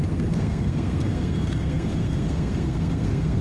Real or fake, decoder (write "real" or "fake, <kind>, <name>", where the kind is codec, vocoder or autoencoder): fake, codec, SNAC